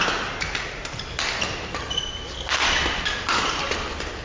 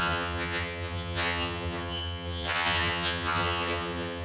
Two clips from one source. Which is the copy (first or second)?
second